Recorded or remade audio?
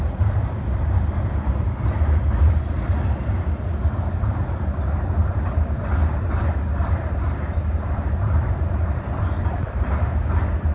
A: remade